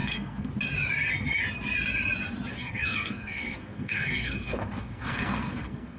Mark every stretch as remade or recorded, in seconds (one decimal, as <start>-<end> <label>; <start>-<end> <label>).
0.0-0.5 remade; 0.5-2.5 recorded; 2.5-6.0 remade

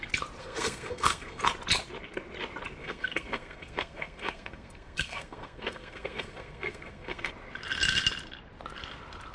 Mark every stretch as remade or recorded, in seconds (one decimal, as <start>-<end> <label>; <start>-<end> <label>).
0.0-0.4 recorded; 0.4-1.4 remade; 1.4-2.8 recorded; 2.8-7.3 remade; 7.3-9.3 recorded

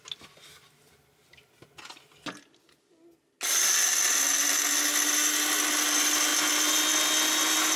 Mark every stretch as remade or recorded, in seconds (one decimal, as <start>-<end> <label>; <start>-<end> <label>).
0.0-7.8 recorded

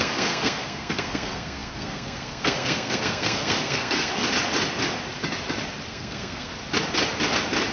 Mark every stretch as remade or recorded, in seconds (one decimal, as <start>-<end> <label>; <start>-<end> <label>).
0.0-4.2 remade; 4.2-5.9 recorded; 5.9-6.5 remade; 6.5-7.7 recorded

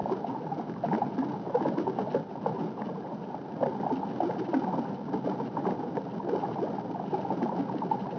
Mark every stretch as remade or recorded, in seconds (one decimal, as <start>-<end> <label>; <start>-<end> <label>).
0.0-8.2 recorded